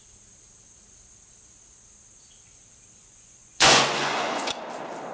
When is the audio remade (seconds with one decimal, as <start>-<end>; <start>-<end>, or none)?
3.0-4.5